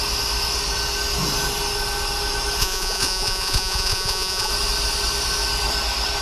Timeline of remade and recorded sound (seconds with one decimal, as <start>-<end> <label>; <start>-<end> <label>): 0.0-2.6 recorded; 2.6-4.5 remade; 4.5-6.2 recorded